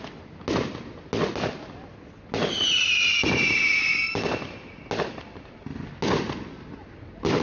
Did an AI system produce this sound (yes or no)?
no